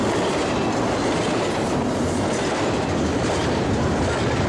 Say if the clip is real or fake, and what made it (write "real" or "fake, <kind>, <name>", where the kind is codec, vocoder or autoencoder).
real